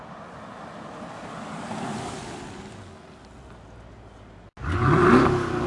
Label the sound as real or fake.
real